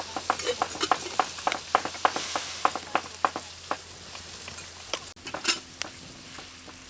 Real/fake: real